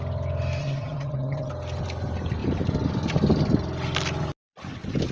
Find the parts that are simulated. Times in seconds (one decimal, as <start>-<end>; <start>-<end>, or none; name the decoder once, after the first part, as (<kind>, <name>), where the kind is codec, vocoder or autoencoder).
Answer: 0.6-1.5 (vocoder, HiFi-GAN)